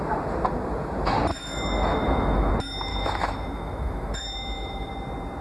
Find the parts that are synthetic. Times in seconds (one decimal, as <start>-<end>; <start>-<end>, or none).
1.3-2.5; 2.9-4.9